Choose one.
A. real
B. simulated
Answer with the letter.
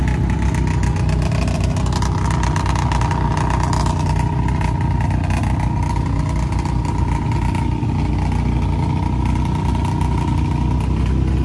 A